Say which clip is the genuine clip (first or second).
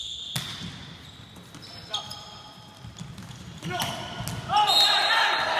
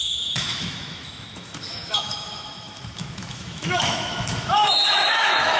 first